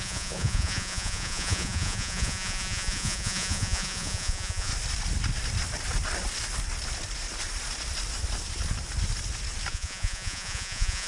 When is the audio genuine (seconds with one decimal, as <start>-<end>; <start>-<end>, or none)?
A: 4.7-9.7